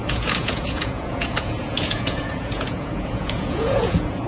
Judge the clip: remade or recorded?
remade